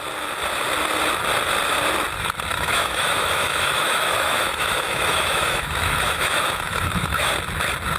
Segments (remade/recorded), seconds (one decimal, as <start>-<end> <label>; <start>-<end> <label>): 0.0-2.5 recorded; 2.5-7.3 remade; 7.3-8.0 recorded